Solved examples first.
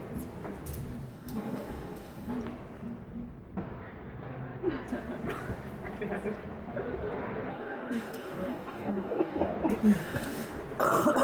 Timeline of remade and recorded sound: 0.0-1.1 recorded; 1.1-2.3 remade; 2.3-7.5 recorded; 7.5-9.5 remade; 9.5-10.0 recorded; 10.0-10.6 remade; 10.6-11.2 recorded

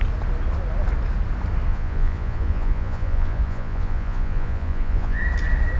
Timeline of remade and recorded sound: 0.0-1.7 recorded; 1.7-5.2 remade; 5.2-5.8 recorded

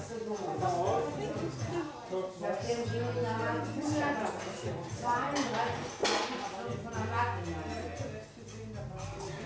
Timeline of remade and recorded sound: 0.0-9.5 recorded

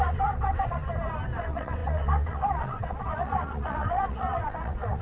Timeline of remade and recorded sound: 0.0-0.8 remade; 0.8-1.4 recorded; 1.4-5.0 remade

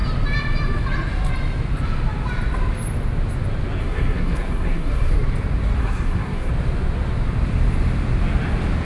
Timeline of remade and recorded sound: 0.0-3.8 recorded; 3.8-5.1 remade; 5.1-5.8 recorded; 5.8-6.5 remade; 6.5-8.8 recorded

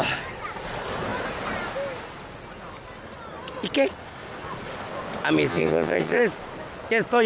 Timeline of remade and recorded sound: 0.0-5.5 recorded; 5.5-6.2 remade; 6.2-7.3 recorded